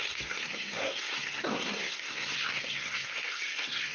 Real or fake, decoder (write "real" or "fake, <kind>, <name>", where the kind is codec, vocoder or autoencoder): fake, codec, SNAC